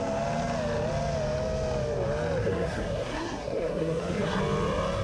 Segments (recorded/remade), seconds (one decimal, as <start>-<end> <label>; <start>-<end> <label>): 0.0-2.4 recorded; 2.4-4.4 remade; 4.4-5.0 recorded